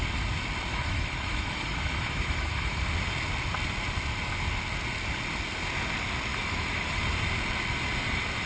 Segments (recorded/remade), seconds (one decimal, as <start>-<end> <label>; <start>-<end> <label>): 0.0-0.7 recorded; 0.7-2.8 remade; 2.8-6.3 recorded; 6.3-7.0 remade; 7.0-8.5 recorded